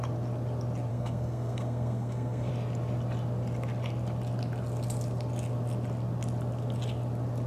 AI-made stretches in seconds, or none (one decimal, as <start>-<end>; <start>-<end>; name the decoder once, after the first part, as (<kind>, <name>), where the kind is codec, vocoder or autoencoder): 0.9-2.5 (codec, SNAC)